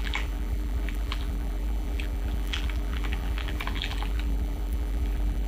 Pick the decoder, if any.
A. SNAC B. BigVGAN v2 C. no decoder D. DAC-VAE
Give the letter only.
B